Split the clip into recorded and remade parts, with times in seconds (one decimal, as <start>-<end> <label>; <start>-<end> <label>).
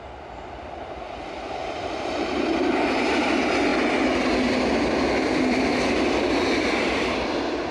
0.0-1.6 recorded; 1.6-3.2 remade; 3.2-7.7 recorded